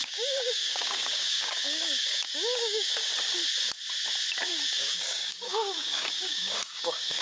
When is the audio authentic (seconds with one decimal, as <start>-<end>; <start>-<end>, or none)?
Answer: 3.1-4.5